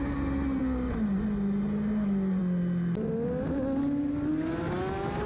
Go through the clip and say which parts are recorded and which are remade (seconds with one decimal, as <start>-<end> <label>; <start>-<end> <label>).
0.0-5.3 recorded